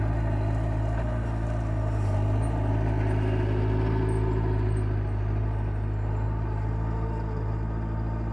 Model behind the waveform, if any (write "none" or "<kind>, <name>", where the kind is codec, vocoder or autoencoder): none